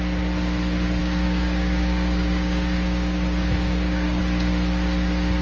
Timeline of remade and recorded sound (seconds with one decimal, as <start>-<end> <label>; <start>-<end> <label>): 0.0-1.0 recorded; 1.0-4.2 remade; 4.2-5.4 recorded